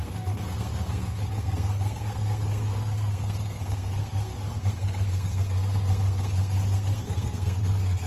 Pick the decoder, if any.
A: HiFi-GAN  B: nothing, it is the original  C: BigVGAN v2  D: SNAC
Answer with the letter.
D